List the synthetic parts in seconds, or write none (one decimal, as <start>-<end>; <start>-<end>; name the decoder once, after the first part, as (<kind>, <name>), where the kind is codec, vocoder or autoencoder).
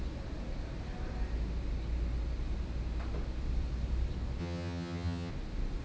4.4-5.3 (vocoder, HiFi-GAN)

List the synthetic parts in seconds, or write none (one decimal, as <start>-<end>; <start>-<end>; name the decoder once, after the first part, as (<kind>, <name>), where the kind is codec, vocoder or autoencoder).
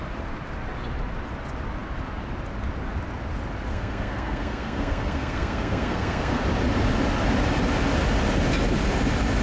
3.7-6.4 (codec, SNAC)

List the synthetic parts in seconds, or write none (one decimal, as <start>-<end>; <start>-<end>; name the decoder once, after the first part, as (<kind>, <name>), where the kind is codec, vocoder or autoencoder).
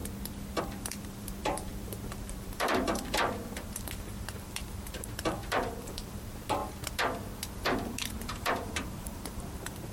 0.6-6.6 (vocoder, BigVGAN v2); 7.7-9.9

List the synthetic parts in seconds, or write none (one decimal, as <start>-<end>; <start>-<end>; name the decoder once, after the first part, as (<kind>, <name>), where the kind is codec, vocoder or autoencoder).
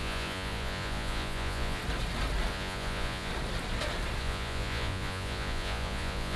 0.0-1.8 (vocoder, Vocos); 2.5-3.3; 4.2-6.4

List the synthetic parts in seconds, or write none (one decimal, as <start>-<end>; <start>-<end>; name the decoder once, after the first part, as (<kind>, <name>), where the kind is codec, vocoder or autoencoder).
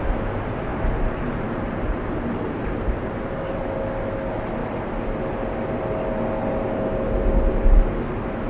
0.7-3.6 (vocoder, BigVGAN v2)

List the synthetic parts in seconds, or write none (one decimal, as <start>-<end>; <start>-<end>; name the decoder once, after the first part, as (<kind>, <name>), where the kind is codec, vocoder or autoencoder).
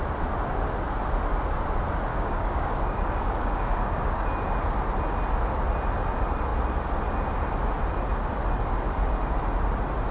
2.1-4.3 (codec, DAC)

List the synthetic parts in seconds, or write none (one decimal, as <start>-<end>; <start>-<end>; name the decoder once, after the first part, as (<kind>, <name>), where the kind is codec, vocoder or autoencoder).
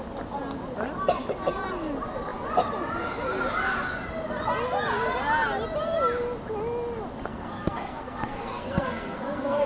7.3-9.7 (codec, SNAC)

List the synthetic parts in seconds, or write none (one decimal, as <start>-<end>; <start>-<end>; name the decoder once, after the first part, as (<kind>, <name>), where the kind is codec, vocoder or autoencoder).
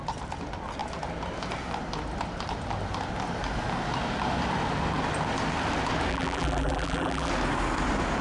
6.1-7.3 (vocoder, BigVGAN v2)